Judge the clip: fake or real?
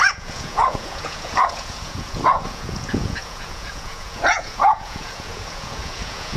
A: fake